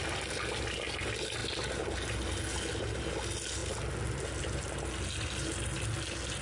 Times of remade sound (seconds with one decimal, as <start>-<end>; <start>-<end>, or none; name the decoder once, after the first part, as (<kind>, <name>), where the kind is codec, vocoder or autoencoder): none